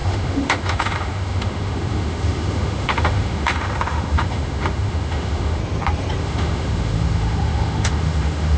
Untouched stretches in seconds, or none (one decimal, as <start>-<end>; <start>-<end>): 5.6-6.2